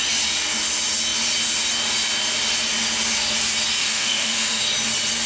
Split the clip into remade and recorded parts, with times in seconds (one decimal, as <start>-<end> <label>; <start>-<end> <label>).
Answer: 0.0-3.8 recorded; 3.8-4.6 remade; 4.6-5.3 recorded